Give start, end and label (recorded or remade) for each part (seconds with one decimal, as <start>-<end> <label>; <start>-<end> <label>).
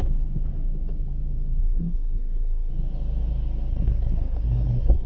0.0-1.6 recorded; 1.6-2.7 remade; 2.7-3.7 recorded; 3.7-5.1 remade